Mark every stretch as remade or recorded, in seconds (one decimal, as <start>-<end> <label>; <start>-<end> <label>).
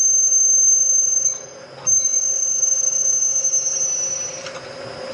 0.0-5.1 recorded